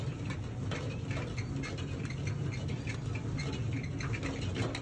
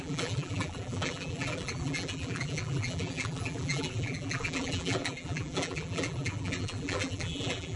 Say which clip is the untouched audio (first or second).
first